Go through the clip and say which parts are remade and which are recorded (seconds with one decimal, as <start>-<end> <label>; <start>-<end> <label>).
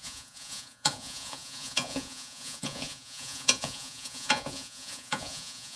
0.0-5.8 remade